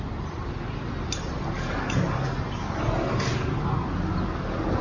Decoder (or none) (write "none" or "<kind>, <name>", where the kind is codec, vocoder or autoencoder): none